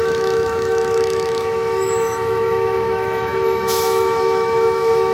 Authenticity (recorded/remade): remade